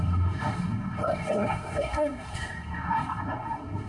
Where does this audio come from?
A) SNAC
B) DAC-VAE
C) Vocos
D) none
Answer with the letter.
A